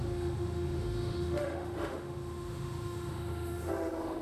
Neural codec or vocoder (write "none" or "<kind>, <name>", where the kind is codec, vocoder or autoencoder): autoencoder, DAC-VAE